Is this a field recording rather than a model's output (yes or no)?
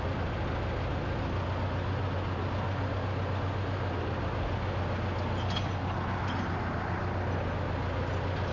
yes